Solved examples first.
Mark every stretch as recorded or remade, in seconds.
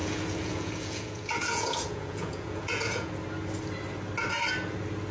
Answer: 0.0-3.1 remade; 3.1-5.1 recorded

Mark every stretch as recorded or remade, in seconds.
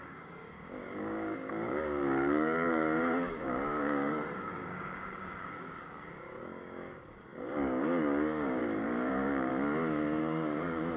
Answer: 0.0-9.5 remade; 9.5-10.2 recorded; 10.2-11.0 remade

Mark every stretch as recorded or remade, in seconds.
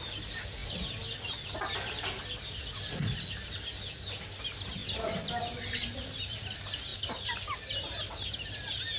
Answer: 0.0-9.0 recorded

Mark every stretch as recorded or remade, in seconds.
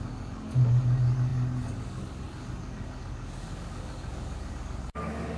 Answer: 0.0-5.4 remade